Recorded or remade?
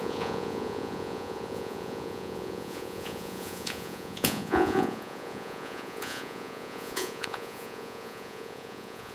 remade